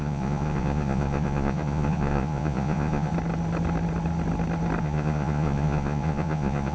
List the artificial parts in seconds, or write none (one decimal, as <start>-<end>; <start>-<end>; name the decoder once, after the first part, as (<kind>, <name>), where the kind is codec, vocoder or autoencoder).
0.0-3.1 (vocoder, Vocos); 4.8-6.7